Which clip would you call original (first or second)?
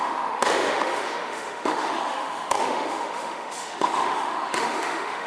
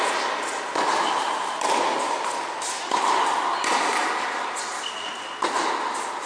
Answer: second